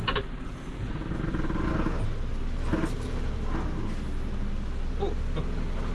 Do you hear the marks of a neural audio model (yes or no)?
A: no